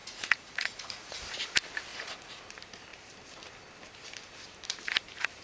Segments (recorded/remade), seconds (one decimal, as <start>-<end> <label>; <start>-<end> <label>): 0.0-1.2 remade; 1.2-1.9 recorded; 1.9-2.4 remade; 2.4-5.4 recorded

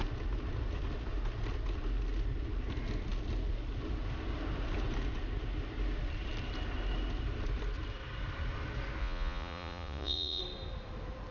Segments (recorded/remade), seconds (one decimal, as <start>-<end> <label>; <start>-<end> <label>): 0.0-9.0 recorded; 9.0-10.4 remade; 10.4-11.3 recorded

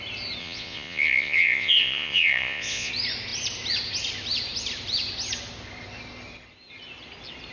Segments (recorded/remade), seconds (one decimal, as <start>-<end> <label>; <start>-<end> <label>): 0.0-0.4 recorded; 0.4-2.9 remade; 2.9-7.5 recorded